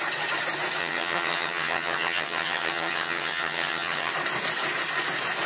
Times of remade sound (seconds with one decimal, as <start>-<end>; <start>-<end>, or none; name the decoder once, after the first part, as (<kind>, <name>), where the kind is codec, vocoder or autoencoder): 0.8-4.1 (vocoder, HiFi-GAN)